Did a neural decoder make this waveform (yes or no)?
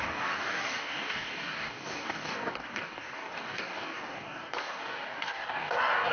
yes